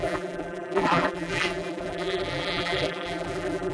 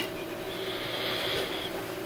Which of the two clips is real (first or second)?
second